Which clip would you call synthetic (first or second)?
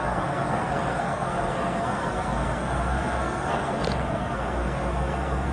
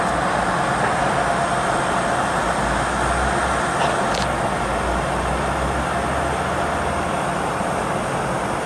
first